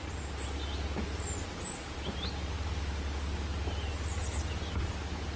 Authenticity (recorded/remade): recorded